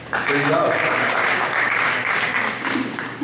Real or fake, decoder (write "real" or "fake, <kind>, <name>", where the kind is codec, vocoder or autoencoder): fake, codec, DAC